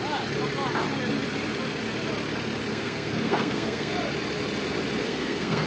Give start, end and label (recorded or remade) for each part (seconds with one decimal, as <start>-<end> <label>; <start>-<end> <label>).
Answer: 0.0-2.7 recorded; 2.7-3.9 remade; 3.9-5.0 recorded; 5.0-5.7 remade